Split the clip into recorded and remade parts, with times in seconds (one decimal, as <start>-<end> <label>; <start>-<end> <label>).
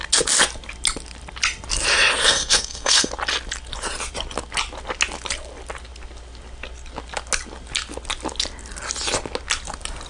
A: 0.0-2.2 recorded; 2.2-3.1 remade; 3.1-10.1 recorded